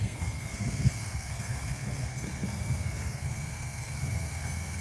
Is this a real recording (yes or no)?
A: no